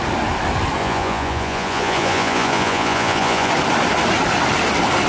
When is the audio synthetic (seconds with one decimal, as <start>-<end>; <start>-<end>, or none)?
0.8-3.5